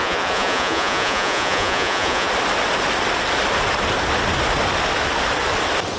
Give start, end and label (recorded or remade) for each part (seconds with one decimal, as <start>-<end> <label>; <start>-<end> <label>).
0.0-2.3 remade; 2.3-6.0 recorded